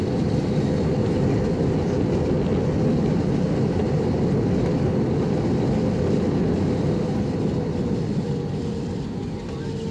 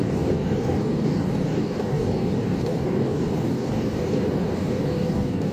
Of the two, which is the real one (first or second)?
first